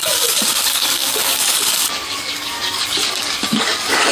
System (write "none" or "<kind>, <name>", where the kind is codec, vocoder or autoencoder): codec, DAC